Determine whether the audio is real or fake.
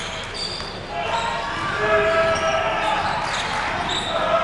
real